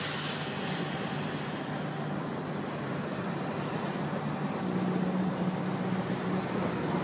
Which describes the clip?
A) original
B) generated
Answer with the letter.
A